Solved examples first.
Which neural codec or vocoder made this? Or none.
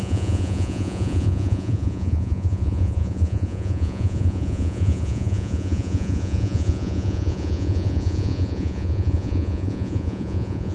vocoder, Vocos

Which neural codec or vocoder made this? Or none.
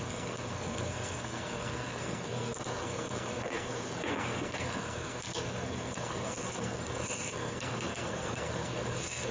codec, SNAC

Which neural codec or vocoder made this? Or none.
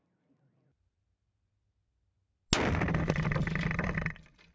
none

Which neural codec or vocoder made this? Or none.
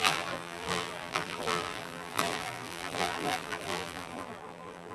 vocoder, BigVGAN v2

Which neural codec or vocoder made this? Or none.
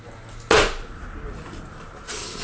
none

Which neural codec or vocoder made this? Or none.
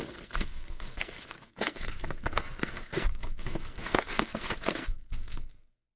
codec, SNAC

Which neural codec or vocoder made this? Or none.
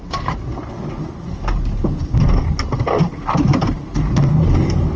none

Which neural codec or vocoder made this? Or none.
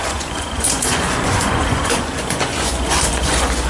vocoder, Vocos